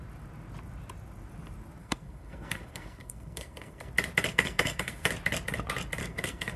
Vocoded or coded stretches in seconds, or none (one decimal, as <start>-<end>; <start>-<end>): 1.8-3.9; 4.3-5.1; 6.0-6.6

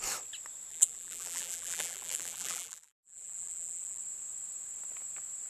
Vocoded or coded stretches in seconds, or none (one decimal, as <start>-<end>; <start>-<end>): 0.7-4.0

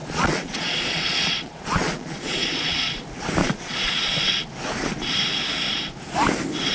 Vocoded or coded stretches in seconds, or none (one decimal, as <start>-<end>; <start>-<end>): 0.0-2.9; 3.4-4.3